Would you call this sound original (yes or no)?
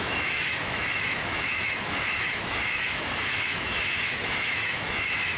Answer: no